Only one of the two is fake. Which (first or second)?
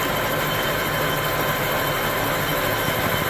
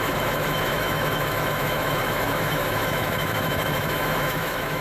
second